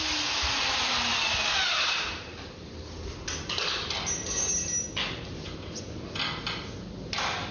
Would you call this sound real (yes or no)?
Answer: yes